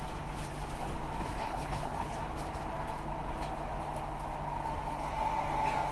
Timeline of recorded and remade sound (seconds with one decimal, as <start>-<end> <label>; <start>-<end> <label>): 0.0-1.2 recorded; 1.2-2.2 remade; 2.2-5.9 recorded